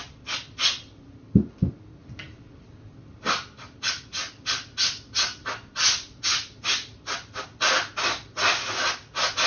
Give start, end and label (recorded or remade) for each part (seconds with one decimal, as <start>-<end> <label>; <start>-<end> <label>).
0.0-9.5 recorded